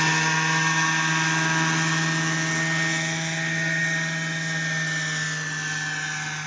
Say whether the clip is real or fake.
real